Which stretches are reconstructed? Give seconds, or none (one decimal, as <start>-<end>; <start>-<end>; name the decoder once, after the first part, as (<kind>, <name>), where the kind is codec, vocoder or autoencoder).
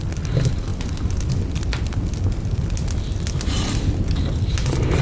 none